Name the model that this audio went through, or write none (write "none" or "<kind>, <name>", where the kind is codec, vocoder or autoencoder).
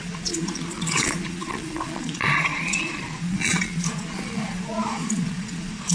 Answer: vocoder, Vocos